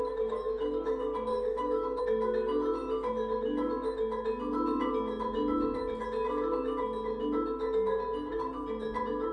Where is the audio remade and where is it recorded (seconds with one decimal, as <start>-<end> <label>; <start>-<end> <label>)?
0.0-1.3 recorded; 1.3-2.0 remade; 2.0-9.3 recorded

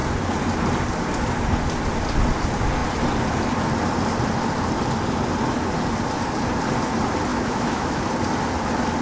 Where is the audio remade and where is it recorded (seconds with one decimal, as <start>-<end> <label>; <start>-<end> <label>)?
0.0-7.3 recorded; 7.3-8.0 remade; 8.0-9.0 recorded

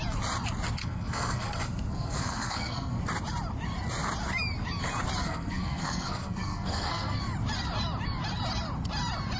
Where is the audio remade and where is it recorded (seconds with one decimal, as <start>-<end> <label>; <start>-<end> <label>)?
0.0-0.8 recorded; 0.8-3.0 remade; 3.0-5.2 recorded; 5.2-7.2 remade; 7.2-9.4 recorded

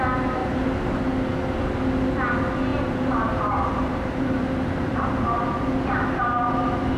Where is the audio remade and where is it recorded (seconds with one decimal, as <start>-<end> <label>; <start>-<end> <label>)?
0.0-0.4 recorded; 0.4-1.0 remade; 1.0-2.7 recorded; 2.7-5.0 remade; 5.0-7.0 recorded

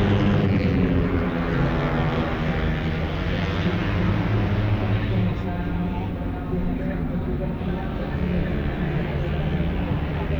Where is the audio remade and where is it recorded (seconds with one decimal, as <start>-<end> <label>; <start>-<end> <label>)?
0.0-0.4 recorded; 0.4-1.1 remade; 1.1-10.4 recorded

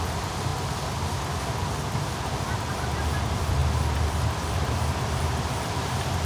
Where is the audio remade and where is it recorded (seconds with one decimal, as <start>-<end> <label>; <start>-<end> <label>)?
0.0-0.5 remade; 0.5-2.7 recorded; 2.7-6.3 remade